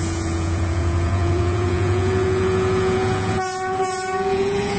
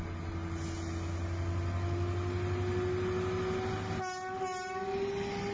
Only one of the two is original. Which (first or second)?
second